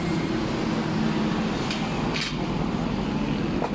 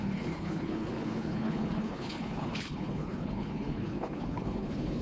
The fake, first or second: second